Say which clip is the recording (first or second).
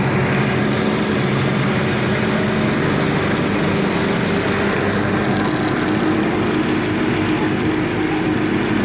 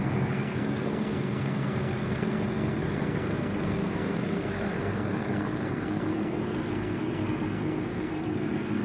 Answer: first